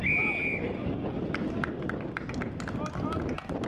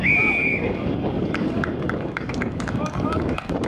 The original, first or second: first